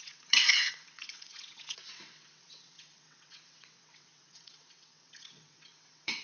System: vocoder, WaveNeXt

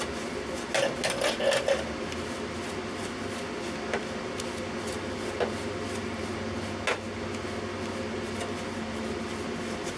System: none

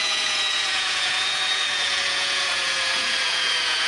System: vocoder, Vocos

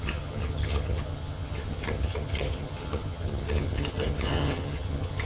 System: vocoder, HiFi-GAN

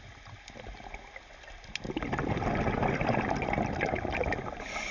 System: none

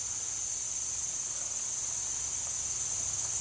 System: none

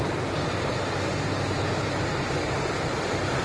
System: none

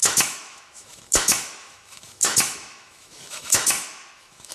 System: autoencoder, DAC-VAE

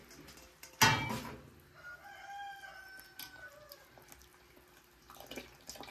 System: none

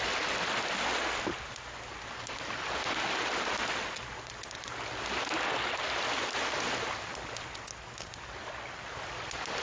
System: none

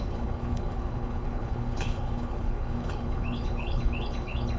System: codec, HILCodec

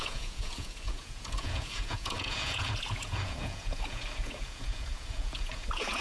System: vocoder, Vocos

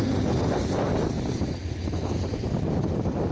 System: none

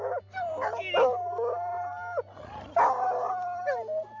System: none